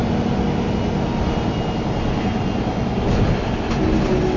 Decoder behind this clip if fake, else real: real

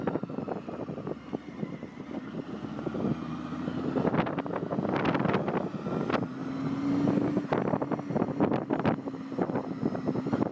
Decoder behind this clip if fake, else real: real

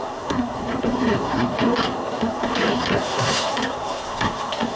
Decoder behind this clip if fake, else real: fake, codec, SNAC